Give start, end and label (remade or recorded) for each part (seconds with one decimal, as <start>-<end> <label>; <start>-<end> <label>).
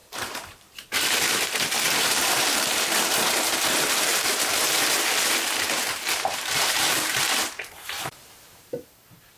0.0-9.4 remade